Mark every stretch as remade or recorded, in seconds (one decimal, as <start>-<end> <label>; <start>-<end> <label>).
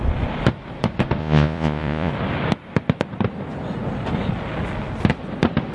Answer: 0.0-1.2 recorded; 1.2-2.1 remade; 2.1-5.7 recorded